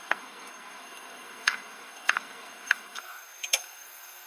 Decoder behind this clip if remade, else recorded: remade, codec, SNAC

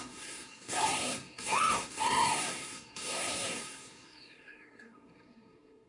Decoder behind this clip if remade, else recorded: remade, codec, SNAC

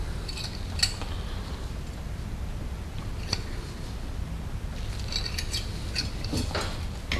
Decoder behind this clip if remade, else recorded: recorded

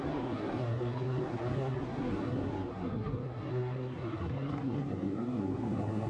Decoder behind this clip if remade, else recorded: remade, codec, SNAC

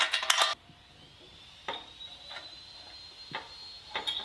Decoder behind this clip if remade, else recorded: recorded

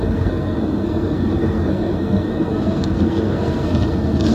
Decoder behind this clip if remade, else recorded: remade, codec, SNAC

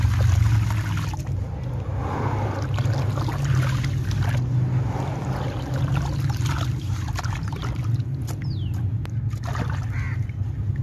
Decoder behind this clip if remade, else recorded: recorded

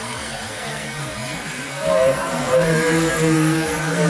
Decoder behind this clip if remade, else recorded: remade, codec, SNAC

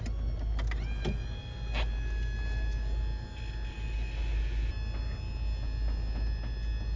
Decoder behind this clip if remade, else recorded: recorded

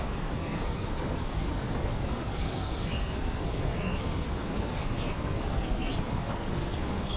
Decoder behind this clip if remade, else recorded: remade, codec, SNAC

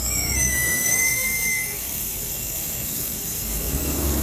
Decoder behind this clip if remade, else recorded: remade, codec, SNAC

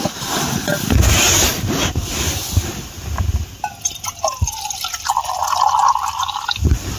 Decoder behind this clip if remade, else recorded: recorded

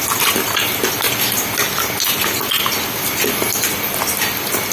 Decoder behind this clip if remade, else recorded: recorded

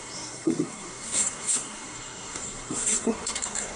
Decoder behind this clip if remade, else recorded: remade, codec, SNAC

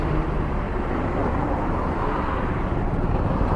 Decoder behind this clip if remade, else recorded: recorded